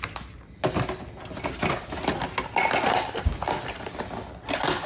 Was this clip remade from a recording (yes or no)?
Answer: no